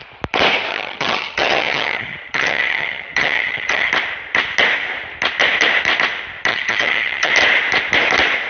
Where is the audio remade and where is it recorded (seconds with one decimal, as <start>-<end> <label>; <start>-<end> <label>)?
0.0-0.7 recorded; 0.7-3.9 remade; 3.9-6.5 recorded; 6.5-7.3 remade; 7.3-8.5 recorded